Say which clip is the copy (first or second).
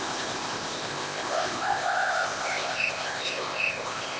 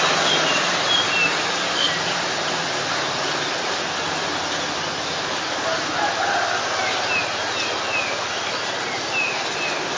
first